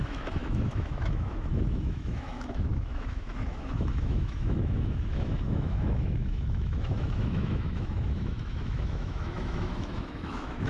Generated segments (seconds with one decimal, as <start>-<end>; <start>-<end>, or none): 0.0-10.7